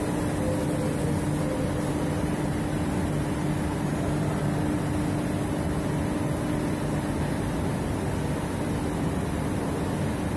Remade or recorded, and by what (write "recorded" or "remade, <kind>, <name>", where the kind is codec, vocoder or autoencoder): recorded